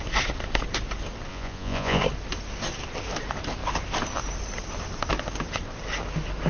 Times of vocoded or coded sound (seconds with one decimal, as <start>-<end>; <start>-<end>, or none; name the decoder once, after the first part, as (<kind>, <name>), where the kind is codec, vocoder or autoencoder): 1.3-2.0 (vocoder, Vocos)